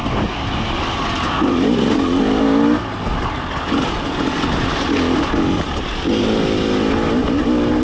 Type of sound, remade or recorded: recorded